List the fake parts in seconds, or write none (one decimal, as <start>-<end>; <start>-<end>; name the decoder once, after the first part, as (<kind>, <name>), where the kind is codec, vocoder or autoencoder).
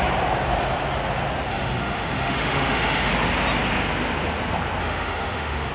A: 1.5-3.1 (autoencoder, DAC-VAE); 4.8-5.7